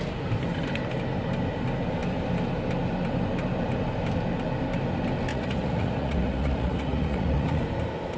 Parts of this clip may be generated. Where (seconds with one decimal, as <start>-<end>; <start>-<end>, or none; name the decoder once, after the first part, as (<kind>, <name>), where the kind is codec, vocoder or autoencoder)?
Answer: 5.3-7.6 (vocoder, Vocos)